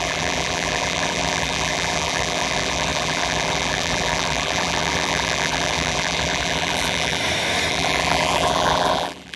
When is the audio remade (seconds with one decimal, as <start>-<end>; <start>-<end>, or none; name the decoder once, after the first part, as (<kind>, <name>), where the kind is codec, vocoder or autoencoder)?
0.0-7.2 (vocoder, BigVGAN v2); 7.7-9.4